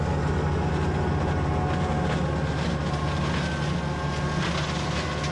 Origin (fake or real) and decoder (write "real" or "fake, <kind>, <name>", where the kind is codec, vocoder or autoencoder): real